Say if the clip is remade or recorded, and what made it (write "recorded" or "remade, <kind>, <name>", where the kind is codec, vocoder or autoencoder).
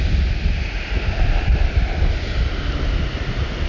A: recorded